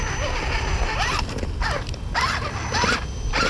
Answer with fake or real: real